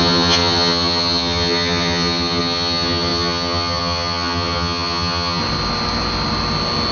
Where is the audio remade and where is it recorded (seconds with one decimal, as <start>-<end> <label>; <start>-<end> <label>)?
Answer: 0.0-5.4 remade; 5.4-6.9 recorded